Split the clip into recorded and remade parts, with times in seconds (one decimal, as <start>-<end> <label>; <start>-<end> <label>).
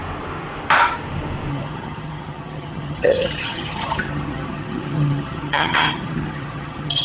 0.0-1.5 recorded; 1.5-7.0 remade